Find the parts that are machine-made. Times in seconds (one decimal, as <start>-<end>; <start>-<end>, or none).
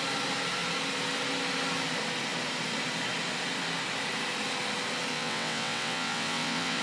5.1-6.8